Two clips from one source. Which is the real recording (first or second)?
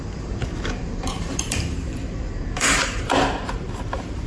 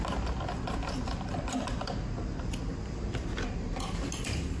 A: second